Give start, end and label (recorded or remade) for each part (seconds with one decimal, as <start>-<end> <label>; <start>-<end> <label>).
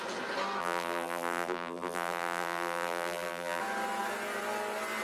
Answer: 0.0-0.6 recorded; 0.6-3.6 remade; 3.6-5.0 recorded